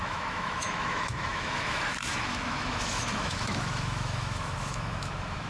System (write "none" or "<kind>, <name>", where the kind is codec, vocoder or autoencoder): autoencoder, DAC-VAE